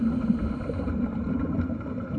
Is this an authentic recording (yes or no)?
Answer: yes